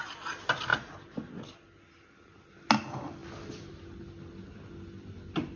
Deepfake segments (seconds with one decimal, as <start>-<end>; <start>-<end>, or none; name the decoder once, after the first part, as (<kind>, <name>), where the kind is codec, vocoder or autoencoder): none